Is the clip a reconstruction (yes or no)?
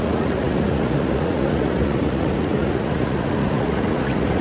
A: yes